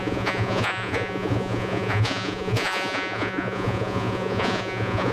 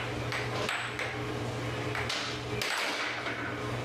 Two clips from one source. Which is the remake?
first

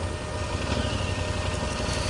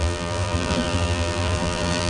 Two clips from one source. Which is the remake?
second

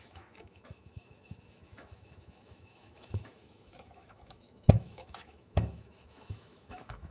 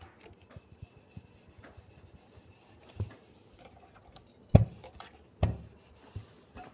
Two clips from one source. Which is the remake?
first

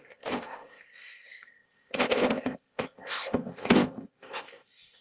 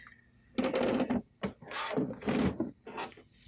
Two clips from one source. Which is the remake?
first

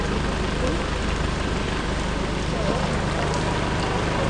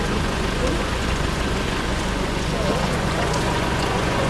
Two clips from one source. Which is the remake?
second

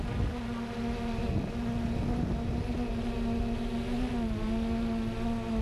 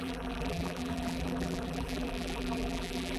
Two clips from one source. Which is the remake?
second